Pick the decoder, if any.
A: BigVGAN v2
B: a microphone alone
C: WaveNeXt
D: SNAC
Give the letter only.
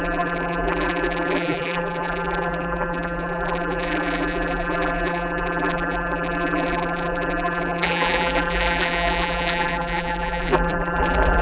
A